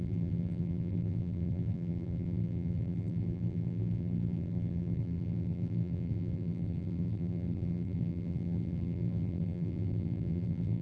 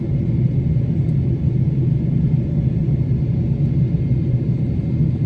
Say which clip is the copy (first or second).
first